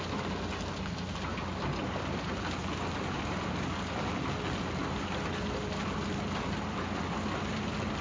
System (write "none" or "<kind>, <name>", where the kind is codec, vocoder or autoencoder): none